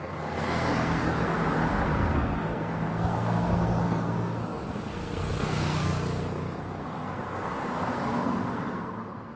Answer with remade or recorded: remade